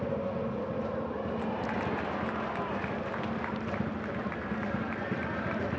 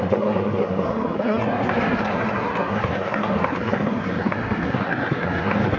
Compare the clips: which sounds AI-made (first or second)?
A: second